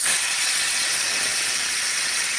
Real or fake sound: fake